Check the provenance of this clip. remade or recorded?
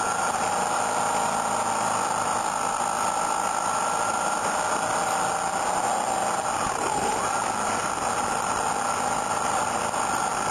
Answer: recorded